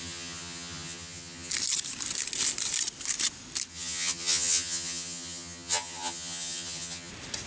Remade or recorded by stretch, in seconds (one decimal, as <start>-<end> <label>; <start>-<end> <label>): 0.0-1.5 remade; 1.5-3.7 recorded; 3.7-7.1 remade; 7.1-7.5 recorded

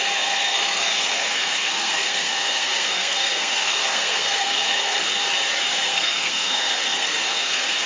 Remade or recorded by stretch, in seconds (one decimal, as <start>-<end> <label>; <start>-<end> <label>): 0.0-5.1 remade; 5.1-5.7 recorded; 5.7-7.9 remade

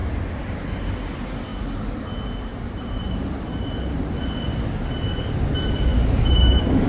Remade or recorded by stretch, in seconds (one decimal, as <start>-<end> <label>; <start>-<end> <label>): 0.0-1.5 recorded; 1.5-2.0 remade; 2.0-2.5 recorded; 2.5-4.2 remade; 4.2-5.9 recorded; 5.9-6.9 remade